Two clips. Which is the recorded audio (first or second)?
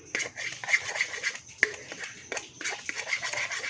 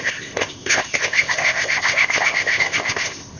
first